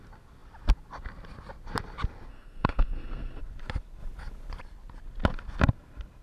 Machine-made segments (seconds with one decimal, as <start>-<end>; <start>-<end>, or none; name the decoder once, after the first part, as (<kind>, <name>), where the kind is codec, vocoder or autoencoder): 2.3-3.4 (codec, SNAC)